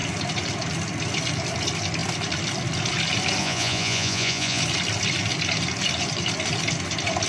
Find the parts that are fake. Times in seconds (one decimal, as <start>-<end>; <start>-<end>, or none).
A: 3.4-4.6